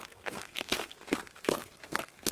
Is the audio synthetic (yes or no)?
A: yes